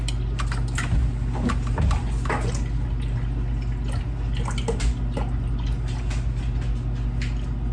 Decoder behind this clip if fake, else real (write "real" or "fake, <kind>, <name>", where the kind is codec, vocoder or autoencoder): real